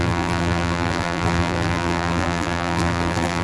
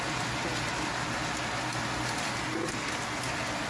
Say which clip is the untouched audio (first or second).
second